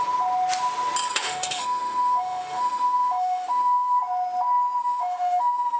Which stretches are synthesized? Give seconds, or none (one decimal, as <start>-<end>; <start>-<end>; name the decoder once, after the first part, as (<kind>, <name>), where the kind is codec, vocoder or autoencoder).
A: 1.1-4.0 (autoencoder, DAC-VAE); 4.8-5.8